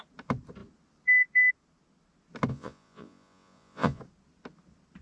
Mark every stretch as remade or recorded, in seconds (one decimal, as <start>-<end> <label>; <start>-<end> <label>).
0.0-2.5 recorded; 2.5-4.0 remade; 4.0-5.0 recorded